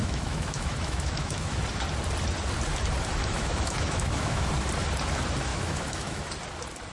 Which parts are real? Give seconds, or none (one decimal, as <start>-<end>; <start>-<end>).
1.6-3.2; 4.5-5.5; 6.2-6.9